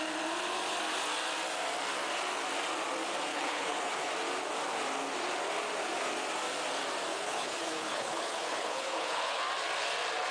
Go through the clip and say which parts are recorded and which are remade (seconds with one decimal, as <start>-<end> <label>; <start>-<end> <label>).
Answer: 0.0-3.3 recorded; 3.3-4.1 remade; 4.1-7.1 recorded; 7.1-9.4 remade; 9.4-10.3 recorded